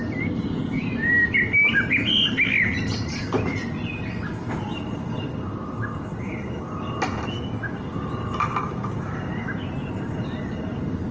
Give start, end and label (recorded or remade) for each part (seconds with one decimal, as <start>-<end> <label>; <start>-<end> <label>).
0.0-11.1 recorded

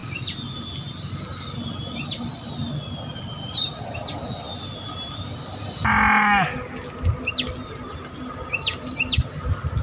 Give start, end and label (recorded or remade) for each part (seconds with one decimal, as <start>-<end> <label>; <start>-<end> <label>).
0.0-9.8 recorded

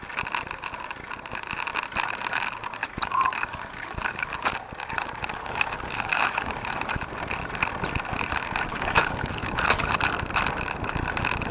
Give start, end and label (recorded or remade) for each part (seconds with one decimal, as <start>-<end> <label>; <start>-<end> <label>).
0.0-2.8 recorded; 2.8-4.5 remade; 4.5-5.3 recorded; 5.3-6.5 remade; 6.5-8.7 recorded; 8.7-9.9 remade; 9.9-11.5 recorded

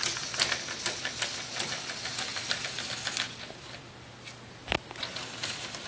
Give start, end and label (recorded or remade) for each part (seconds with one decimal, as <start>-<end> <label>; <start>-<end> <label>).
0.0-5.9 recorded

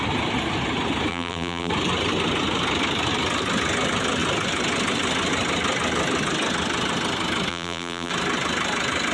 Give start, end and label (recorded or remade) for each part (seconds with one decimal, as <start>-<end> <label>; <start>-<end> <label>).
0.0-1.1 recorded; 1.1-1.7 remade; 1.7-7.5 recorded; 7.5-8.1 remade; 8.1-9.1 recorded

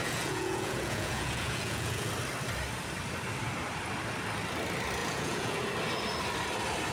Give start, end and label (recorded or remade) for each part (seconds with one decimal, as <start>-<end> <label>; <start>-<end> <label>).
0.0-2.1 remade; 2.1-5.0 recorded; 5.0-5.6 remade; 5.6-6.9 recorded

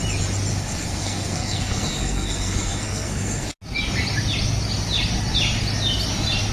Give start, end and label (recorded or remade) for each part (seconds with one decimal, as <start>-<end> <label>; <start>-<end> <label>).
0.0-0.5 recorded; 0.5-3.5 remade; 3.5-6.5 recorded

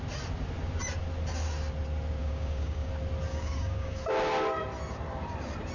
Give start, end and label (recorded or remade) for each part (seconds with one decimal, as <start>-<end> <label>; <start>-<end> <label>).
0.0-2.2 recorded; 2.2-2.9 remade; 2.9-3.3 recorded; 3.3-4.0 remade; 4.0-5.7 recorded